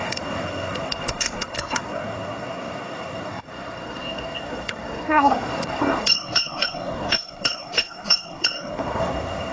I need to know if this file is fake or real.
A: fake